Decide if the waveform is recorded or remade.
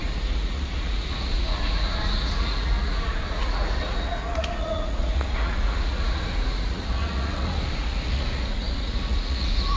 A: remade